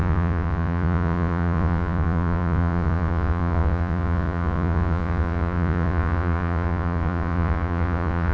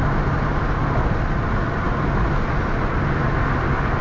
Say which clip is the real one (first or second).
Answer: second